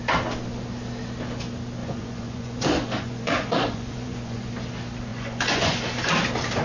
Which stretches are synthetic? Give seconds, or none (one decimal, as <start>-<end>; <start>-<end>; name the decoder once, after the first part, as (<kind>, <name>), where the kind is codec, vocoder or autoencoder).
1.8-4.5 (vocoder, Vocos); 5.1-5.8